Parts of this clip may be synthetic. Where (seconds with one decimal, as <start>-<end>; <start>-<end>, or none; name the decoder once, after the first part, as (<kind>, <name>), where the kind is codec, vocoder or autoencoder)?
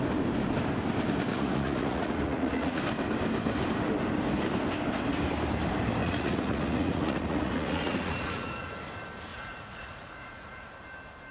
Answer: 1.3-2.8 (vocoder, Vocos); 6.0-8.8; 9.3-10.7